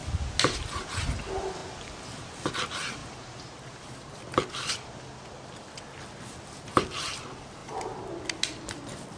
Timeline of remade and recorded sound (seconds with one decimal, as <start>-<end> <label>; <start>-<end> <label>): 0.0-3.0 recorded; 3.0-4.2 remade; 4.2-9.2 recorded